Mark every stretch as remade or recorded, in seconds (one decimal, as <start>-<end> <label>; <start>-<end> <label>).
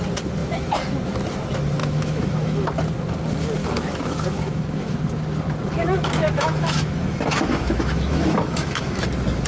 0.0-1.8 recorded; 1.8-2.7 remade; 2.7-3.6 recorded; 3.6-5.0 remade; 5.0-5.8 recorded; 5.8-9.0 remade; 9.0-9.5 recorded